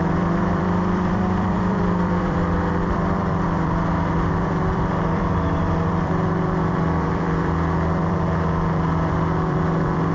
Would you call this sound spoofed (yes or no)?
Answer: yes